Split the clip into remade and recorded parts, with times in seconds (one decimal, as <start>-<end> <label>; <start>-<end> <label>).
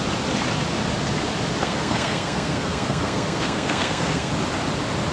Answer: 0.0-1.6 recorded; 1.6-4.3 remade; 4.3-5.1 recorded